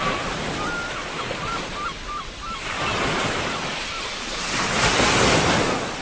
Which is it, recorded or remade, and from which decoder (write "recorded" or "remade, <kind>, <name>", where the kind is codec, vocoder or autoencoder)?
recorded